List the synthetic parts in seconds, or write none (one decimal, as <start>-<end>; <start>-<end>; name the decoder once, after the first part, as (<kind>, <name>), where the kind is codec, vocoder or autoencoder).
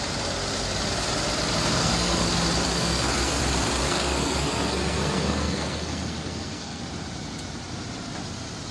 1.8-2.3 (codec, SNAC); 2.7-3.4; 3.8-6.8